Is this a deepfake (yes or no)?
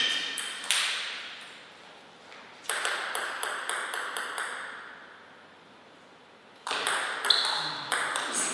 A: no